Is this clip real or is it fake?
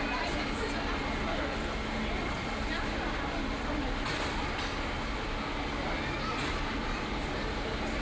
real